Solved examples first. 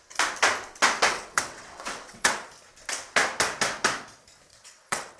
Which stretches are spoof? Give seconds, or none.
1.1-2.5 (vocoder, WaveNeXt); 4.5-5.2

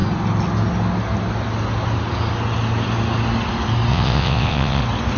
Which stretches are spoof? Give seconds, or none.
3.9-4.8 (vocoder, WaveNeXt)

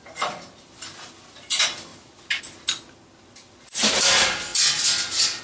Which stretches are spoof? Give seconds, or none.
none

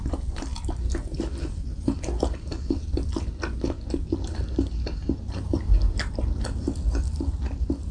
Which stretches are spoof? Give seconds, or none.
none

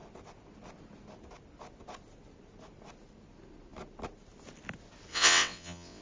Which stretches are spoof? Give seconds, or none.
5.1-6.0 (vocoder, WaveNeXt)

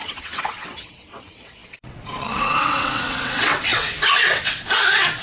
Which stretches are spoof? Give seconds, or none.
0.0-5.2 (vocoder, WaveNeXt)

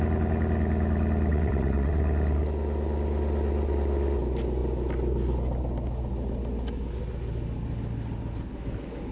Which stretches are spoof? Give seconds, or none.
1.3-2.0 (vocoder, WaveNeXt)

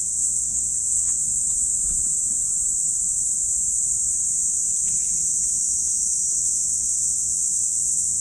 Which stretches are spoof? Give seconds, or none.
0.0-1.2 (vocoder, WaveNeXt); 6.4-8.2